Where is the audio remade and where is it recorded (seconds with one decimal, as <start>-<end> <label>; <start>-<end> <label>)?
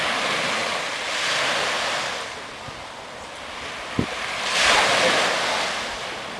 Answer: 0.0-6.4 recorded